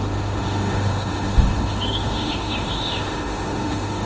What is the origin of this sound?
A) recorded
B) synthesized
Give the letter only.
B